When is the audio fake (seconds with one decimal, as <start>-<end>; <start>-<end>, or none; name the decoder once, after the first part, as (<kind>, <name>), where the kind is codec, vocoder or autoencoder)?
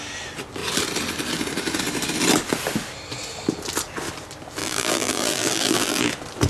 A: 4.6-6.1 (vocoder, BigVGAN v2)